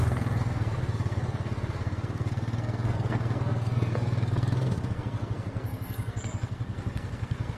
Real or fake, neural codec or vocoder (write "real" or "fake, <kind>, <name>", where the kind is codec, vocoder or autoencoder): fake, codec, SNAC